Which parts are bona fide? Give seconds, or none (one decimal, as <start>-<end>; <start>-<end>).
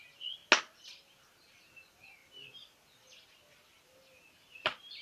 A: 0.0-5.0